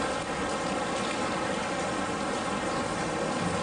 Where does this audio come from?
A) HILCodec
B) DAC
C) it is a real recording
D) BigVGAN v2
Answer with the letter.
C